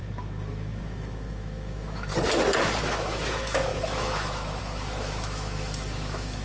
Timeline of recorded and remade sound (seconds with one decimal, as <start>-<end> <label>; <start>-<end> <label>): 0.0-2.1 remade; 2.1-2.8 recorded; 2.8-6.4 remade